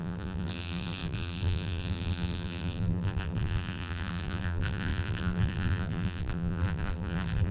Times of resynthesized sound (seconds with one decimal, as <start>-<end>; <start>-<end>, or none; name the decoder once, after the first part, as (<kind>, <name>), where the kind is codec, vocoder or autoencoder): 0.0-7.5 (vocoder, BigVGAN v2)

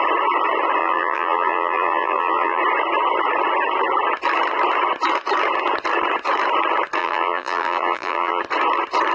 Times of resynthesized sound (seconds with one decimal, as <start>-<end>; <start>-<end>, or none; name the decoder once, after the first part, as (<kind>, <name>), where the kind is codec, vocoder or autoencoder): 0.8-2.6 (vocoder, BigVGAN v2); 7.0-8.4